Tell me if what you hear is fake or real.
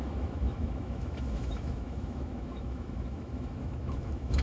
fake